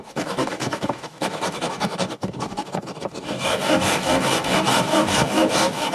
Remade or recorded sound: remade